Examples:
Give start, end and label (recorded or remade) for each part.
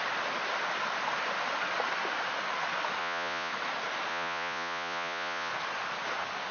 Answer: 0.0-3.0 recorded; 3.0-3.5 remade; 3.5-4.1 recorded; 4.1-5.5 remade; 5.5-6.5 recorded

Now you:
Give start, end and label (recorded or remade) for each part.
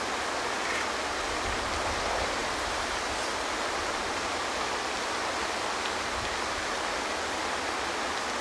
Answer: 0.0-8.4 recorded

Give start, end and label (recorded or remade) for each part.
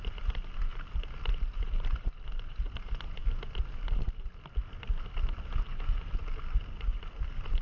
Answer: 0.0-7.6 recorded